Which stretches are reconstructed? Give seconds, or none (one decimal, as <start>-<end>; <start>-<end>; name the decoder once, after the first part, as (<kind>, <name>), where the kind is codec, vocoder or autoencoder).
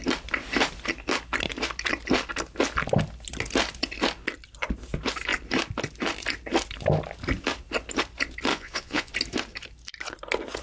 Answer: 8.5-9.1 (vocoder, Vocos)